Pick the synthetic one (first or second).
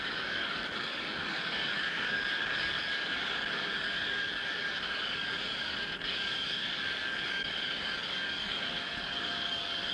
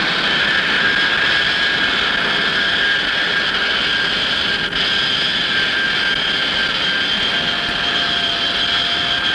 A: first